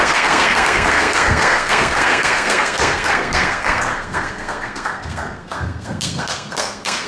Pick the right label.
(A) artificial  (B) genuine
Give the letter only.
A